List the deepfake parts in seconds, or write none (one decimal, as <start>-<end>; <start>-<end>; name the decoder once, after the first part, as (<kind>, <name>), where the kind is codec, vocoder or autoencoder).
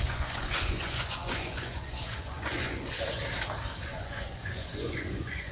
0.0-3.2 (vocoder, Vocos); 3.8-5.5